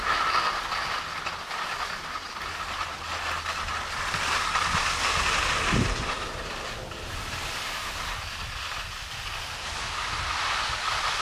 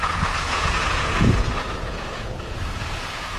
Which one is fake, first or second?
second